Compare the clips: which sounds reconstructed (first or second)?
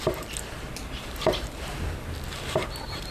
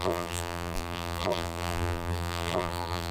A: second